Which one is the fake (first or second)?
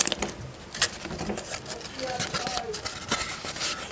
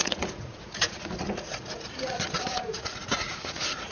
second